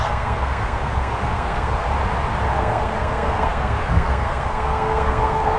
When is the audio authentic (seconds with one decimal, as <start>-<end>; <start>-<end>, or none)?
1.9-2.6